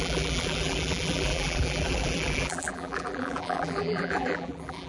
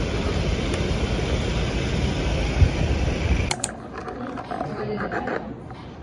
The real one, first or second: second